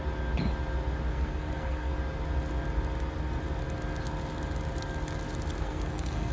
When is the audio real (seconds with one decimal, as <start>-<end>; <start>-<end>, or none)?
0.0-1.1; 1.9-5.6